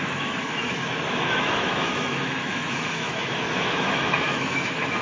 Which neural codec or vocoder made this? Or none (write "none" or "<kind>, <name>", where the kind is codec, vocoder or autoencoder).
autoencoder, DAC-VAE